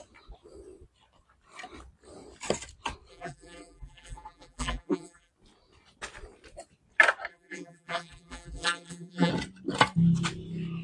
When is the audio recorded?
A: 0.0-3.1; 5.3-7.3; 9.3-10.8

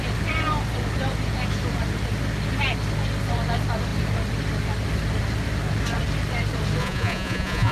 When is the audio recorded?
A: 0.0-6.8

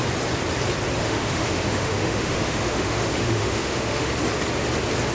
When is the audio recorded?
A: 0.0-1.0; 4.1-5.1

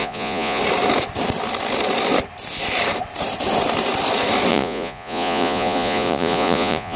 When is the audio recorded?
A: 0.6-4.5

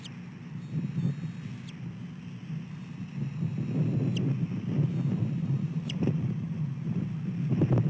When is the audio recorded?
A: 0.0-5.4; 7.0-7.9

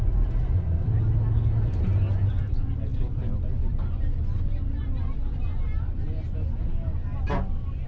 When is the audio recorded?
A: 0.0-7.9

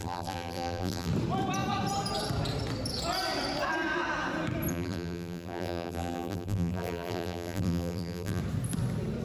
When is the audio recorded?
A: 1.1-4.7; 8.4-9.2

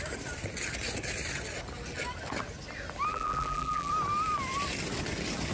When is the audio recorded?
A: 0.0-3.1; 3.9-5.5